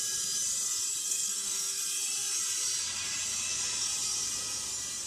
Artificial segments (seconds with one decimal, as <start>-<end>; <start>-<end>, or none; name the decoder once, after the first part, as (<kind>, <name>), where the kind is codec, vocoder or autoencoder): 1.0-1.8 (codec, SNAC)